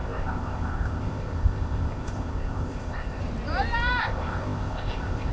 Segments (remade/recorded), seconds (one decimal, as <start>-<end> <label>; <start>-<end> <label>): 0.0-3.2 remade; 3.2-4.0 recorded; 4.0-5.3 remade